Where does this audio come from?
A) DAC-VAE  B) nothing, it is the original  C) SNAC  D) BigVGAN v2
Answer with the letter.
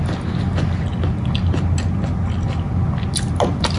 B